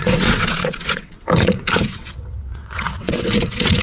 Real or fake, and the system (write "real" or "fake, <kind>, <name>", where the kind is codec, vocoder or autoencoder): fake, vocoder, WaveNeXt